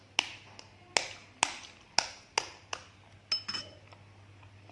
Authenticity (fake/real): real